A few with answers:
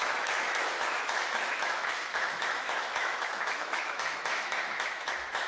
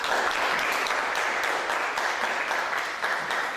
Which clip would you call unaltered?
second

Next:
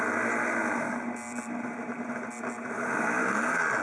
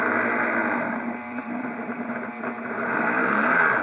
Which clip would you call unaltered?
first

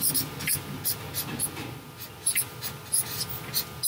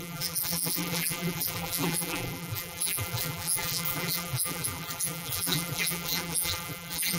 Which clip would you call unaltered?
first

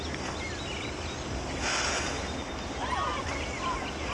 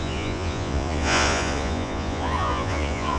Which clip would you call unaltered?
first